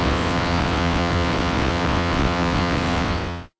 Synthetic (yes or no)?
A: yes